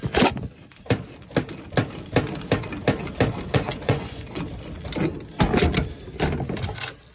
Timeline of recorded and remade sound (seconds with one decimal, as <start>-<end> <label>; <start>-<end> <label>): 0.0-3.5 recorded; 3.5-4.4 remade; 4.4-7.1 recorded